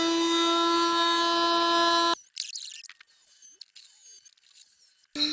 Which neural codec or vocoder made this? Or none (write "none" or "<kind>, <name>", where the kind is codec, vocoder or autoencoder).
none